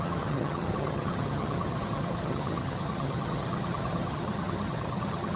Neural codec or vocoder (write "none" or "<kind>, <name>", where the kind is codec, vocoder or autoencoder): vocoder, HiFi-GAN